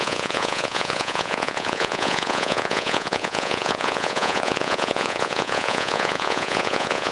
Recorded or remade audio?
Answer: remade